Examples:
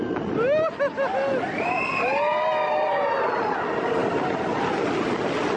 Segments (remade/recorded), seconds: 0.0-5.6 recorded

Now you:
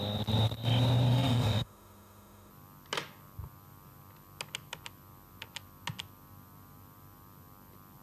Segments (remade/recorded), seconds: 0.0-1.1 recorded; 1.1-2.5 remade; 2.5-8.0 recorded

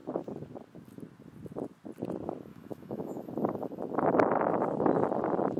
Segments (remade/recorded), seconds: 0.0-2.5 recorded; 2.5-3.2 remade; 3.2-5.6 recorded